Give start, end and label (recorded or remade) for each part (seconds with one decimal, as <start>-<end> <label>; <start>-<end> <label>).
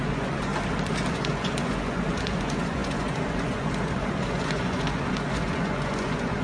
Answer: 0.0-0.5 remade; 0.5-1.1 recorded; 1.1-6.4 remade